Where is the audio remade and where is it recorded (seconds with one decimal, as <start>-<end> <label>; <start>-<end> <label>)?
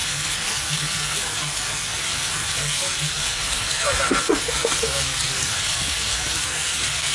0.0-7.1 remade